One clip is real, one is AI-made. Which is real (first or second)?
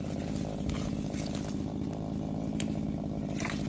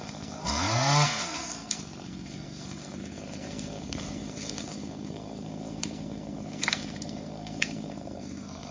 first